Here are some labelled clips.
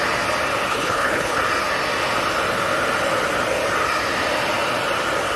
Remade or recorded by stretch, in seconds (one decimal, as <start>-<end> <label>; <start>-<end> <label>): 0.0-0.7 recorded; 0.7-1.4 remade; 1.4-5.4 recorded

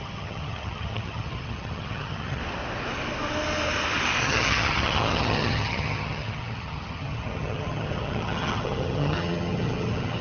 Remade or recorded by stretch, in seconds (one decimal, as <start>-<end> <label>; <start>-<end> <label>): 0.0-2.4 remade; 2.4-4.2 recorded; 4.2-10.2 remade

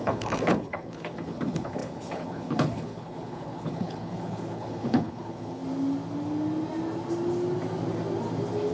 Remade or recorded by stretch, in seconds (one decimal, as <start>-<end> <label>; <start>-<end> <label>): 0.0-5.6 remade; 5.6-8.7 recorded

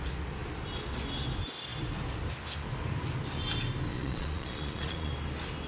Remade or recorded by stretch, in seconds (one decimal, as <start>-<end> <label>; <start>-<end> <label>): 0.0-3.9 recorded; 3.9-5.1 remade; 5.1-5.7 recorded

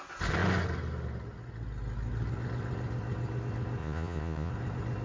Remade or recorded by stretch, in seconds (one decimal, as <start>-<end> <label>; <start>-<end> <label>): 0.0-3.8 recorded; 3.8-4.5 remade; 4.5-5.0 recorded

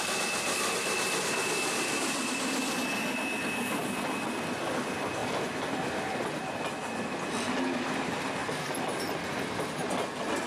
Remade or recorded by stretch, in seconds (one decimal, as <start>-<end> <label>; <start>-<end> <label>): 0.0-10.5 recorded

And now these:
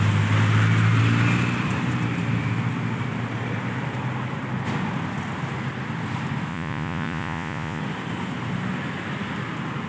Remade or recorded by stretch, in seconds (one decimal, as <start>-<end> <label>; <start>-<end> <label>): 0.0-6.5 recorded; 6.5-7.8 remade; 7.8-9.9 recorded

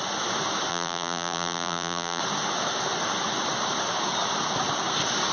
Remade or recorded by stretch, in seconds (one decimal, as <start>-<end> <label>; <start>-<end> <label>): 0.0-0.7 recorded; 0.7-2.2 remade; 2.2-5.3 recorded